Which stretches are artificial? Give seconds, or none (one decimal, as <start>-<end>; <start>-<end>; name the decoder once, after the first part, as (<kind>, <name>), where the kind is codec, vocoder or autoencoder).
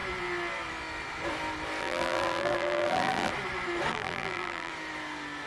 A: 1.8-3.3 (vocoder, BigVGAN v2); 3.9-4.7